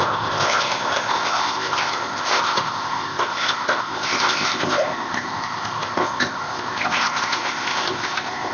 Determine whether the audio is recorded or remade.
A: remade